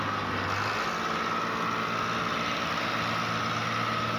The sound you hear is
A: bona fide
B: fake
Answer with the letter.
A